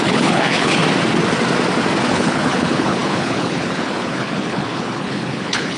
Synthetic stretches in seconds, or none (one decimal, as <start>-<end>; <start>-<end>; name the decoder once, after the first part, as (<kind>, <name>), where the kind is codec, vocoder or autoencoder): 0.0-0.8 (codec, HILCodec); 2.1-5.8